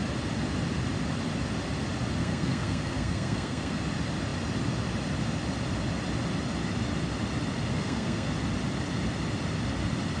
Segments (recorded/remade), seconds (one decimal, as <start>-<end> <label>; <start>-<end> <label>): 0.0-2.2 recorded; 2.2-3.8 remade; 3.8-7.7 recorded; 7.7-8.3 remade; 8.3-10.2 recorded